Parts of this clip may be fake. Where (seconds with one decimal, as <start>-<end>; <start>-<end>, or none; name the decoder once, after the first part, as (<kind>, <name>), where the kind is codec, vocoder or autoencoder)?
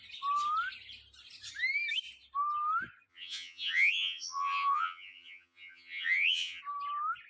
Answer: 3.1-6.6 (vocoder, HiFi-GAN)